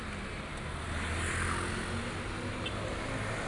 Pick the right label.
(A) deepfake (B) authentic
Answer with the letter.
B